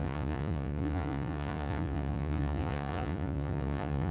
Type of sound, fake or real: fake